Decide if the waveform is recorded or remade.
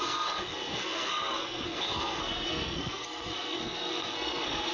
remade